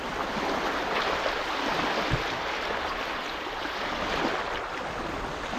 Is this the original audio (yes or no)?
yes